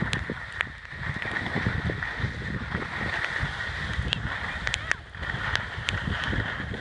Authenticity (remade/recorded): recorded